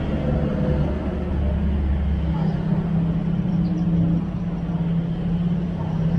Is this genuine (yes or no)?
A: yes